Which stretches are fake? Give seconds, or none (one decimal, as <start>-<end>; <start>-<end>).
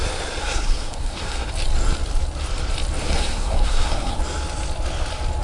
0.4-1.5; 3.0-4.2